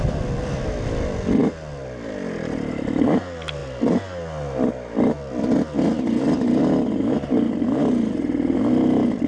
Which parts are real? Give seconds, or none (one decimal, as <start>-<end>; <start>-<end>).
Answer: 0.0-9.3